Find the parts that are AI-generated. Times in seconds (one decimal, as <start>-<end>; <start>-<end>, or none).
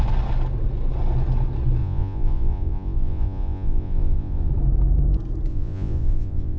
1.8-4.5; 5.5-6.6